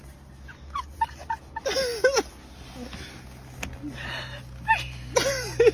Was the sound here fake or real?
real